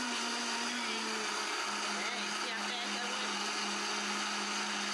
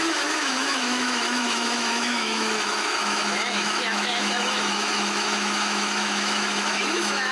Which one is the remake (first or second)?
second